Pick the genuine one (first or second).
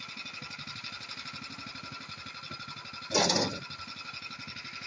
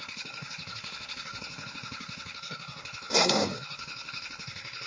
first